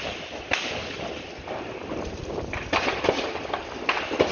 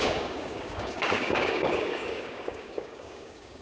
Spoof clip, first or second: second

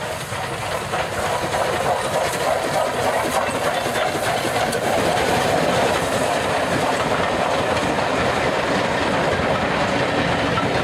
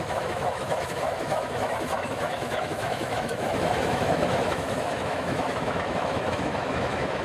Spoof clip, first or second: second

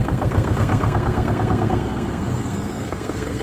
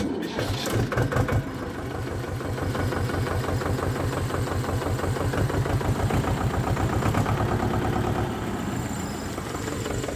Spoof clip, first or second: first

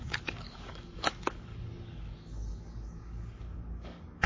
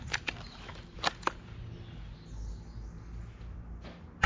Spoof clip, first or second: first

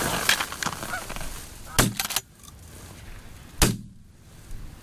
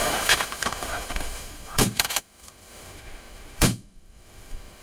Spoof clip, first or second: second